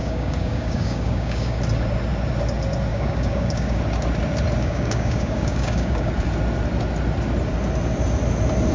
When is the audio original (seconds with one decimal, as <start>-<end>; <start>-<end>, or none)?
1.6-2.9; 3.8-4.6; 6.1-8.7

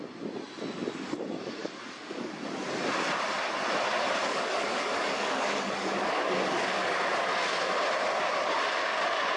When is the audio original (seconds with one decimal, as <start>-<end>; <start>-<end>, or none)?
0.0-1.6; 2.3-4.2; 7.0-9.4